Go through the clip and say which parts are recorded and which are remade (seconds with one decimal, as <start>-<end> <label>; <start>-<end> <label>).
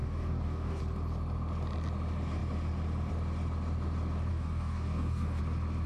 0.0-0.8 remade; 0.8-4.3 recorded; 4.3-5.4 remade; 5.4-5.9 recorded